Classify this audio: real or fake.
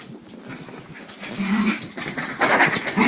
real